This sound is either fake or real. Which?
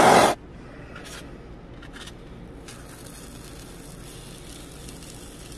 real